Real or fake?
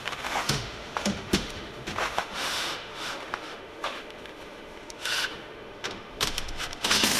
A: fake